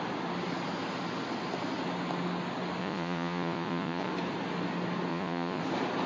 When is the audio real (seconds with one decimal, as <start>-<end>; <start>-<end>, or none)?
0.0-2.8; 4.1-5.1; 5.6-6.1